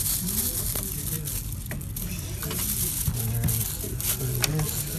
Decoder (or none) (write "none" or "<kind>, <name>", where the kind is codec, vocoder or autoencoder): none